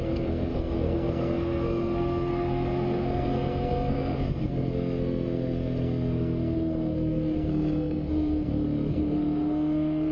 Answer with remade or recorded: remade